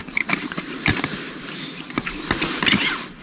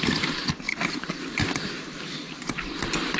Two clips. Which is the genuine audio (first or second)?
second